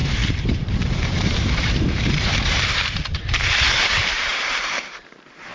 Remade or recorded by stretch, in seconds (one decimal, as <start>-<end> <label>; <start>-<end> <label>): 0.0-5.5 remade